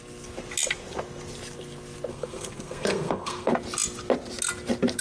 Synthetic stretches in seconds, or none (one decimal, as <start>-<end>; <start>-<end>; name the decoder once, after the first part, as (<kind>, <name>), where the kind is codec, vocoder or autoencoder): 2.1-3.5 (codec, SNAC)

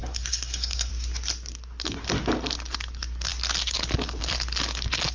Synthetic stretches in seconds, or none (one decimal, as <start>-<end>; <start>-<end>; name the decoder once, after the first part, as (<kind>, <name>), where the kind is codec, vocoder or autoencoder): 0.0-0.9 (codec, SNAC)